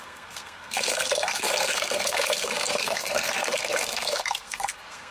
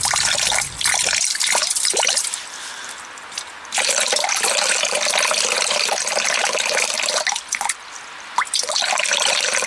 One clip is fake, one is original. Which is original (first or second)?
second